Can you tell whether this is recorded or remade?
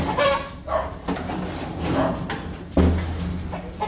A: recorded